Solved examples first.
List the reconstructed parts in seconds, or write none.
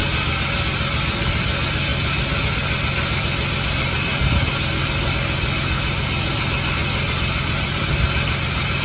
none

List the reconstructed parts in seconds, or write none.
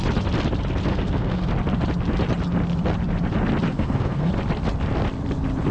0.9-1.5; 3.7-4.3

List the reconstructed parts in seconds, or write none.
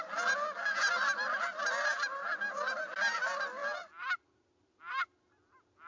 none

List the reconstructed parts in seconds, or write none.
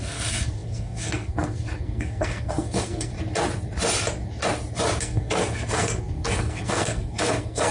0.0-3.1; 5.0-7.7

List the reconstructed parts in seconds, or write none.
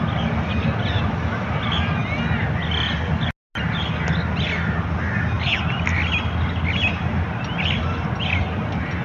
none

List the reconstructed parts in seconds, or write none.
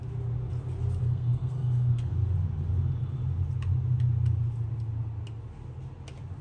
1.0-2.1